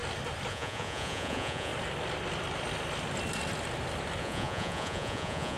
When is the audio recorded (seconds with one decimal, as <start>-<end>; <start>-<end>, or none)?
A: 0.0-0.5; 1.7-4.2